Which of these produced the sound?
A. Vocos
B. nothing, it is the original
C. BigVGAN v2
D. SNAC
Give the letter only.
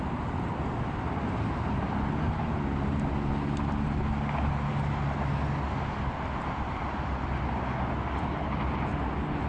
B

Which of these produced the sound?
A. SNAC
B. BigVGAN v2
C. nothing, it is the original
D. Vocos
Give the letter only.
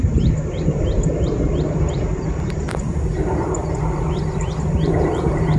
B